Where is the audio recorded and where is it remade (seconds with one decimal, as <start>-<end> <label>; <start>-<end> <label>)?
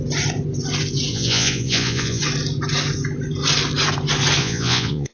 0.0-1.1 recorded; 1.1-2.2 remade; 2.2-4.4 recorded; 4.4-5.1 remade